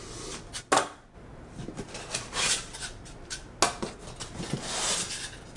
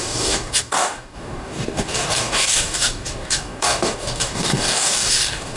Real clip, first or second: first